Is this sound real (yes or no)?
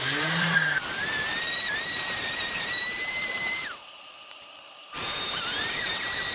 no